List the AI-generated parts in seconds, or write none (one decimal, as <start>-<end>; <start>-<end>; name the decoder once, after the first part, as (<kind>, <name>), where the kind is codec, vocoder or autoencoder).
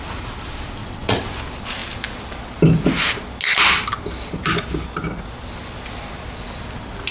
0.8-1.4 (vocoder, WaveNeXt)